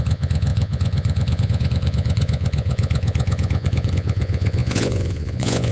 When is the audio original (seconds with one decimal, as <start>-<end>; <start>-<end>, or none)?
none